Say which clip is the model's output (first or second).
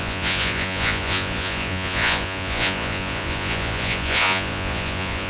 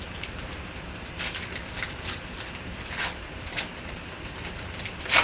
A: first